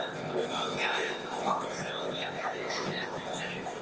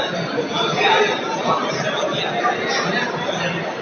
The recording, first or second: second